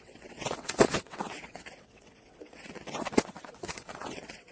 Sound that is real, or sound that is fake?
fake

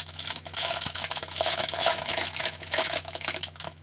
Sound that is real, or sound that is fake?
fake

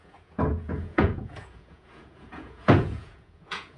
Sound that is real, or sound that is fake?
fake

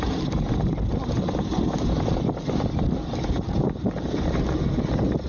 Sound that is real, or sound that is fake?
real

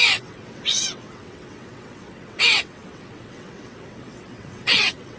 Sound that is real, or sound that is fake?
fake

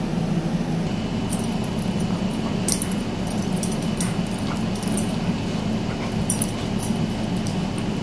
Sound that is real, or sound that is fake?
fake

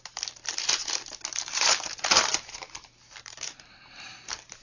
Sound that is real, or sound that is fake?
fake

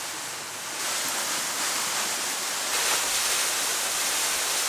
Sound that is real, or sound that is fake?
real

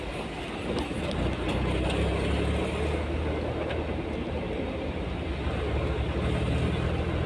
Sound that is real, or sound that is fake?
real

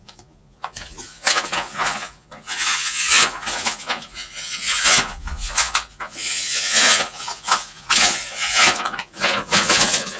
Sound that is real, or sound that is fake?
fake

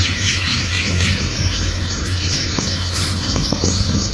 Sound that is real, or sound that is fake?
fake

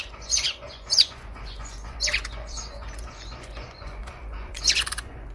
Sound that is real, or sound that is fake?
fake